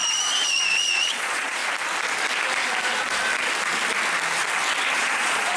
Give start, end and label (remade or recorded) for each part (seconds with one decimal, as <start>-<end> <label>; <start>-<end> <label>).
0.0-1.6 remade; 1.6-5.0 recorded; 5.0-5.6 remade